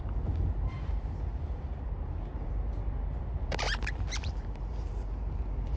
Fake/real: fake